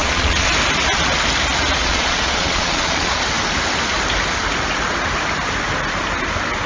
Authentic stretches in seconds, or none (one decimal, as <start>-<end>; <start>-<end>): 0.5-1.8; 3.2-6.7